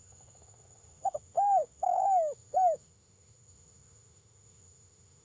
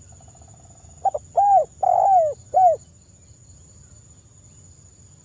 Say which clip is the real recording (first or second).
second